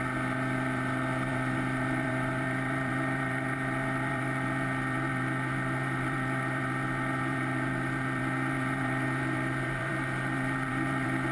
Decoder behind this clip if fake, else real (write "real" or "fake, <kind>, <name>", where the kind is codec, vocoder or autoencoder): fake, vocoder, BigVGAN v2